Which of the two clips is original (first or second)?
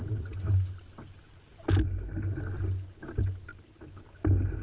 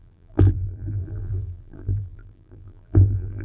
first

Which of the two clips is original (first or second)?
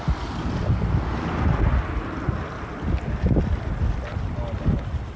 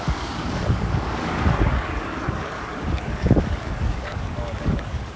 first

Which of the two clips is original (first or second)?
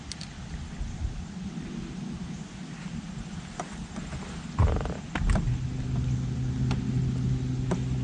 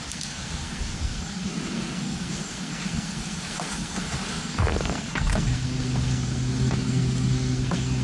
first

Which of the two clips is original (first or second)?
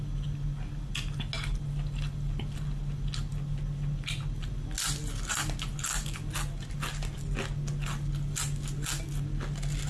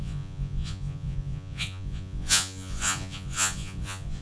first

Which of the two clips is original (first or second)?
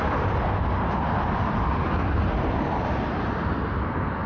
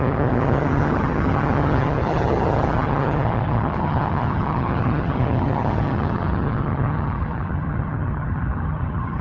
first